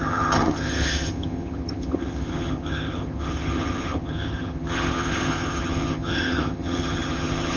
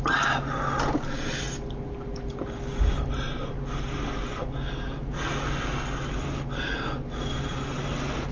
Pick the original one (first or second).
second